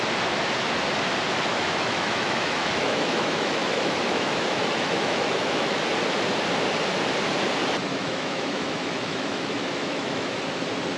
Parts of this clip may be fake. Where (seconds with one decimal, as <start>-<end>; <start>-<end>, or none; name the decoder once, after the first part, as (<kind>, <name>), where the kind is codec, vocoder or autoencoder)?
1.5-5.8 (autoencoder, DAC-VAE); 7.9-10.4